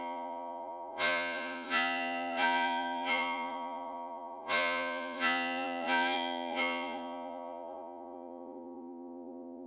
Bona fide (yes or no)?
no